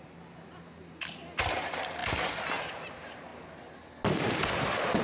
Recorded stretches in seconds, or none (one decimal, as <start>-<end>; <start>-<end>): 0.0-2.0; 2.5-5.0

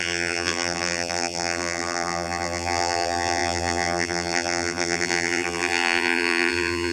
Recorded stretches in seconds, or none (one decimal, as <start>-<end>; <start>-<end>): none

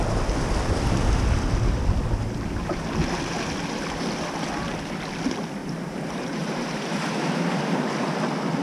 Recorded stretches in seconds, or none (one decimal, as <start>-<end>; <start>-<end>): 0.0-5.6; 8.0-8.6

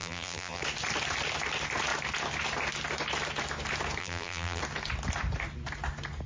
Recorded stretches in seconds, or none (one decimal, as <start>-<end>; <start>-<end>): 0.6-4.0; 4.6-6.3

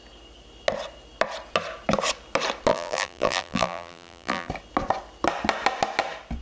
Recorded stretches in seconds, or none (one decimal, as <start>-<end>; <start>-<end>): 0.0-2.7; 4.5-6.4